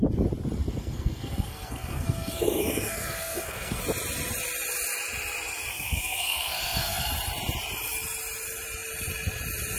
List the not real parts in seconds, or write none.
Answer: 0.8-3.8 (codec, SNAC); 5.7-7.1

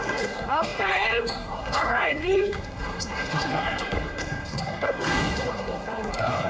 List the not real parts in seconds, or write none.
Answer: 0.0-6.5 (codec, SNAC)

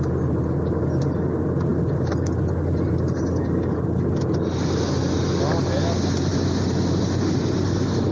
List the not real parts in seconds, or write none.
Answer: none

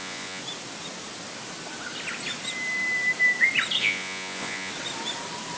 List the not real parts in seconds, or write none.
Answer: 0.0-0.4 (vocoder, Vocos); 3.8-4.7

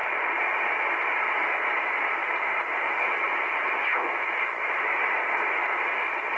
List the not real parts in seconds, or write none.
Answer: 0.0-0.6 (vocoder, BigVGAN v2); 2.2-3.1